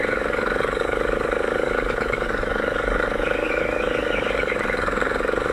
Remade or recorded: remade